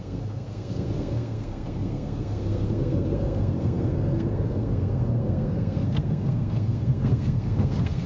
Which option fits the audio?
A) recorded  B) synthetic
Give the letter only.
B